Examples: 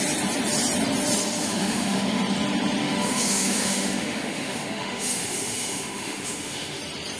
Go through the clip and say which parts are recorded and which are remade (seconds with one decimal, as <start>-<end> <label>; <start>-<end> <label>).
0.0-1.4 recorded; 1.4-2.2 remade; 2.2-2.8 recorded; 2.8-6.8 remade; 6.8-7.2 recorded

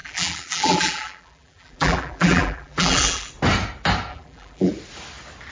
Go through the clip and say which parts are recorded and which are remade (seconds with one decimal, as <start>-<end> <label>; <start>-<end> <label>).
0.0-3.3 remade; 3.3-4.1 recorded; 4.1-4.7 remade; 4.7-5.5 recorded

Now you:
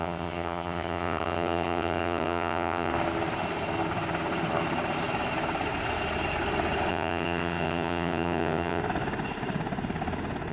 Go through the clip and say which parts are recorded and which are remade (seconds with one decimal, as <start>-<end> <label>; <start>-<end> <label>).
0.0-2.9 remade; 2.9-6.9 recorded; 6.9-8.8 remade; 8.8-10.5 recorded